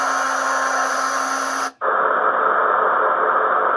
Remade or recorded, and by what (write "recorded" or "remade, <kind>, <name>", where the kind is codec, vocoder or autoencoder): recorded